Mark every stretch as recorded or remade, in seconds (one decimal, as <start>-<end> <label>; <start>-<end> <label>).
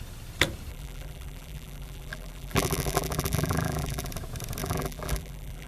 0.0-0.7 recorded; 0.7-4.1 remade; 4.1-4.6 recorded; 4.6-5.7 remade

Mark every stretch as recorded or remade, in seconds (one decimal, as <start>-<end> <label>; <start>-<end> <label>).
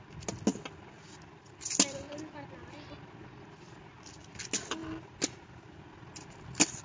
0.0-6.8 recorded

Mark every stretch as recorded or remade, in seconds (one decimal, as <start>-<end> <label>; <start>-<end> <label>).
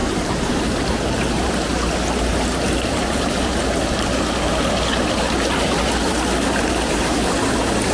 0.0-1.5 remade; 1.5-2.3 recorded; 2.3-3.6 remade; 3.6-7.9 recorded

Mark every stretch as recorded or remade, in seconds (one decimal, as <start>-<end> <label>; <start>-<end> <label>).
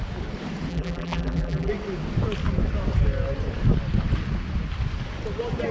0.0-0.7 recorded; 0.7-1.7 remade; 1.7-5.7 recorded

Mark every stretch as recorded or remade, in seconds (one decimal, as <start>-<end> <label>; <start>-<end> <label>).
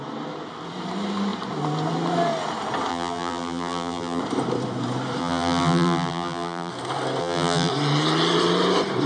0.0-2.9 recorded; 2.9-4.2 remade; 4.2-5.2 recorded; 5.2-6.7 remade; 6.7-7.2 recorded; 7.2-7.7 remade; 7.7-9.1 recorded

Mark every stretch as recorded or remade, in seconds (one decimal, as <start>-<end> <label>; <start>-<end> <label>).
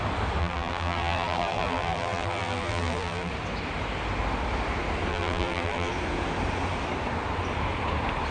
0.0-0.4 recorded; 0.4-3.3 remade; 3.3-5.1 recorded; 5.1-5.9 remade; 5.9-8.3 recorded